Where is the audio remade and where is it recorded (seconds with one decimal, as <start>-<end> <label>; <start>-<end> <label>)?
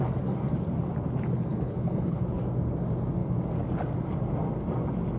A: 0.0-1.5 recorded; 1.5-2.4 remade; 2.4-5.2 recorded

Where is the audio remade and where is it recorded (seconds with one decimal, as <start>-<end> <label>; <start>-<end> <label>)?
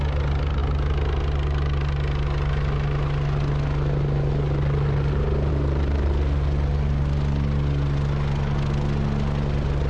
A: 0.0-9.9 recorded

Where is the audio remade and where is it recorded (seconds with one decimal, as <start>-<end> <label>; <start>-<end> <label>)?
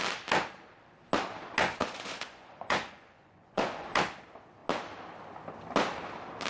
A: 0.0-1.6 recorded; 1.6-3.9 remade; 3.9-6.5 recorded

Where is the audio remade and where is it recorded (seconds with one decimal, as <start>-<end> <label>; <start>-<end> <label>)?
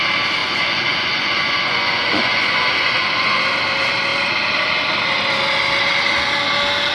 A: 0.0-0.4 recorded; 0.4-3.4 remade; 3.4-6.9 recorded